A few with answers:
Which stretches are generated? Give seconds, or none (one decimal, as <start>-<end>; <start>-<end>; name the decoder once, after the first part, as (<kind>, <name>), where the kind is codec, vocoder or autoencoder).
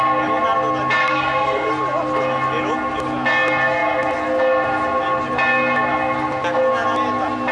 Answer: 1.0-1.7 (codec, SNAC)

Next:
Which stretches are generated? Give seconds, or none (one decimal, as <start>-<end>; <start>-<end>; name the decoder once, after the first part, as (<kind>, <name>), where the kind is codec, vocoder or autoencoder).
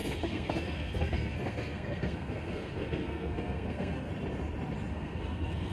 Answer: 0.0-4.1 (codec, SNAC); 4.9-5.7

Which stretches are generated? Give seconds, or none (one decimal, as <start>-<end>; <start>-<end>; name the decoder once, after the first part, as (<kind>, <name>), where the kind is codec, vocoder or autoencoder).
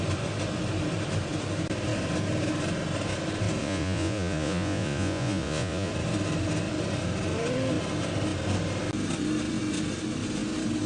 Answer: 3.6-5.9 (vocoder, Vocos)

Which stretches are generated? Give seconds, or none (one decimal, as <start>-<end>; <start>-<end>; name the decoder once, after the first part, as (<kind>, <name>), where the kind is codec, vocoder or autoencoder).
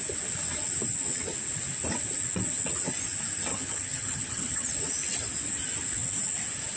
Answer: 3.5-4.7 (vocoder, HiFi-GAN)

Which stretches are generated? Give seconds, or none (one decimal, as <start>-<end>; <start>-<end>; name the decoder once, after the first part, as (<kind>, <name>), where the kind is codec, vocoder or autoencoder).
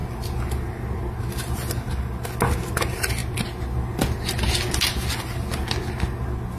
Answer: none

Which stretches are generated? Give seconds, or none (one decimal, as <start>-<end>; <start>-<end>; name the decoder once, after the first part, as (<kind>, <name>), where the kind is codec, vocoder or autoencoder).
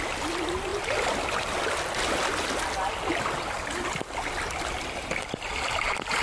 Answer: none